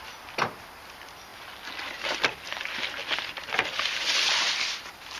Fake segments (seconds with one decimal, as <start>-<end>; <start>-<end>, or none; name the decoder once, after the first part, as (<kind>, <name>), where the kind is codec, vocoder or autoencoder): none